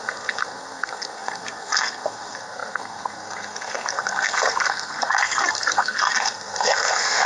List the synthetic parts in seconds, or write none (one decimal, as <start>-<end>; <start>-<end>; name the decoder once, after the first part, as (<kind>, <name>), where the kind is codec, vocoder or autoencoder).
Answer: 0.0-7.3 (codec, SNAC)

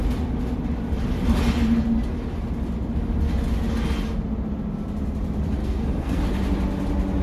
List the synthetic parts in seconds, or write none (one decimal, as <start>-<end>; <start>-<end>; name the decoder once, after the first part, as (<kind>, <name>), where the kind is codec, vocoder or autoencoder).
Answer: 5.6-6.2 (codec, SNAC)

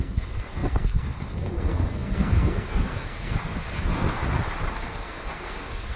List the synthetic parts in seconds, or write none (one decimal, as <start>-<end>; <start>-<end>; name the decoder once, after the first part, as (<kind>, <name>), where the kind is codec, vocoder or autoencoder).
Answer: 0.0-4.2 (codec, SNAC); 4.7-6.0

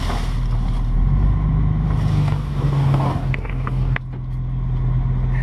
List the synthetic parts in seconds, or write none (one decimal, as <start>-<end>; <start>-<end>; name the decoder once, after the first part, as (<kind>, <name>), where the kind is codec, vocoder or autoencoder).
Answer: 2.1-4.0 (codec, DAC)

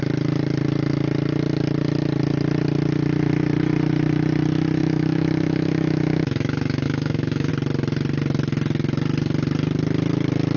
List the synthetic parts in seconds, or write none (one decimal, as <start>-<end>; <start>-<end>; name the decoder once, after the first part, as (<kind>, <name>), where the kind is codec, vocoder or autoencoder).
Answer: 4.8-7.5 (autoencoder, DAC-VAE)

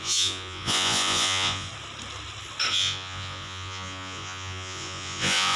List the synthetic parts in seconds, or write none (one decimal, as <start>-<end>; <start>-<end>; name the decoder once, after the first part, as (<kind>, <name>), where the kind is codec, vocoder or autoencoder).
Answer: 0.0-1.7 (vocoder, Vocos); 2.7-5.6

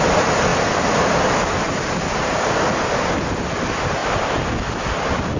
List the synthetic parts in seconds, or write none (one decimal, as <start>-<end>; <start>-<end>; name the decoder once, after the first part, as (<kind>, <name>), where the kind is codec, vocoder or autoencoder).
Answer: none